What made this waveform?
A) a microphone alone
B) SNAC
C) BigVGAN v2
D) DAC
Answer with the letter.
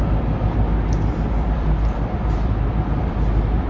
C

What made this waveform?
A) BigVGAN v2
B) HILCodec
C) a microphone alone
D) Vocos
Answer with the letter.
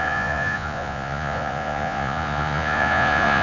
D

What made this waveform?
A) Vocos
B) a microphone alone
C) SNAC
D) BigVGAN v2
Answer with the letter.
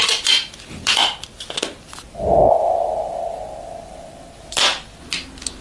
B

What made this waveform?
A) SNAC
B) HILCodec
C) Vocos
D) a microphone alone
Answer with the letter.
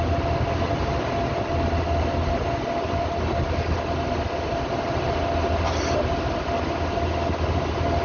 D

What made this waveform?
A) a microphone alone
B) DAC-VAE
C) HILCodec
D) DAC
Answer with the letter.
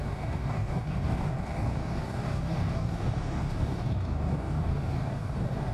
D